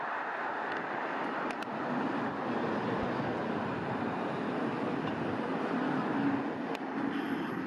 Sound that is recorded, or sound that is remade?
recorded